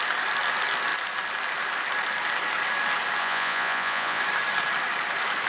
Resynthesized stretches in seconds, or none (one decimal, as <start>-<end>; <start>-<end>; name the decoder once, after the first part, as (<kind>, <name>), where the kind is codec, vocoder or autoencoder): 3.2-4.2 (vocoder, Vocos)